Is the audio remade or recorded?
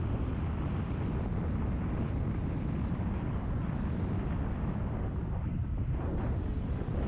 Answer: recorded